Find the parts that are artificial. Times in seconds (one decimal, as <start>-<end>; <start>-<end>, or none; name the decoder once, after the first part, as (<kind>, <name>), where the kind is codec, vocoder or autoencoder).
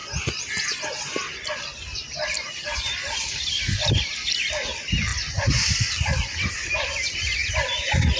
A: none